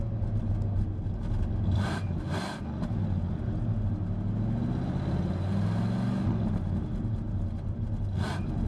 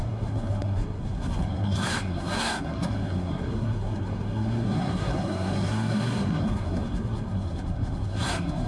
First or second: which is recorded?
first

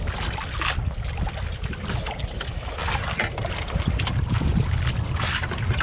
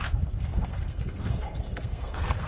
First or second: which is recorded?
first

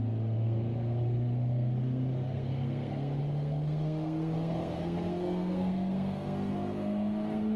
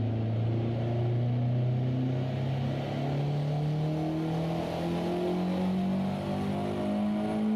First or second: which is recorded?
second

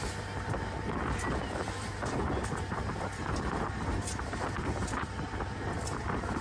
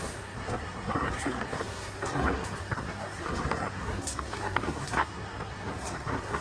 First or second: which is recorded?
first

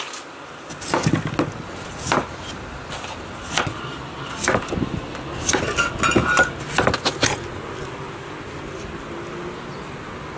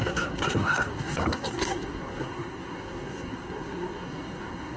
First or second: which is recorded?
first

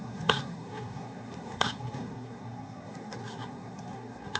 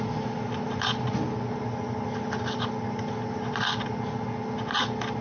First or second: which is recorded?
second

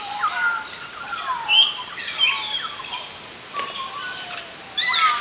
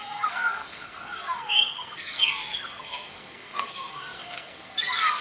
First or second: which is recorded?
first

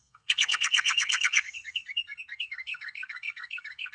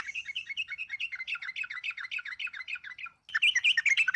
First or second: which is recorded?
second